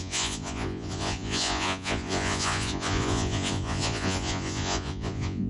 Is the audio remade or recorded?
remade